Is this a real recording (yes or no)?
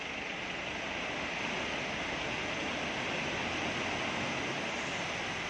yes